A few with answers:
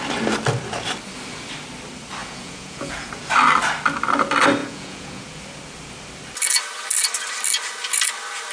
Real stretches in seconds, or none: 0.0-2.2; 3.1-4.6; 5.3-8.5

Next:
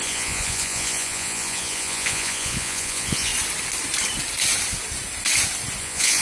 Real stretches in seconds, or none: 3.3-5.8

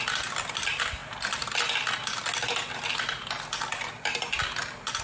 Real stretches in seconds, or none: 0.0-5.0

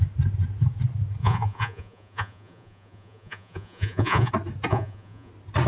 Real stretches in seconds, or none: 0.0-1.2; 4.3-4.7; 5.3-5.7

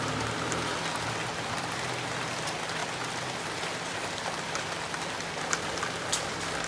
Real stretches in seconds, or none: 0.0-6.7

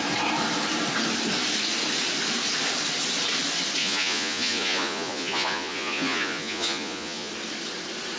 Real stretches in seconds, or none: 0.0-3.8; 7.3-8.2